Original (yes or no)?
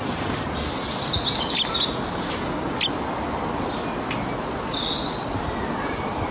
yes